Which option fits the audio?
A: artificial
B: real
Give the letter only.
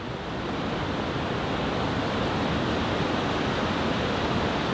B